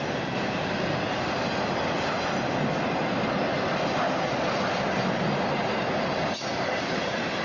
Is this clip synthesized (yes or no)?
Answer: no